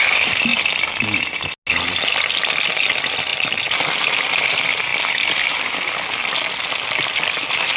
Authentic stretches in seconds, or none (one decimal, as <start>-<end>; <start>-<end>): 0.0-7.8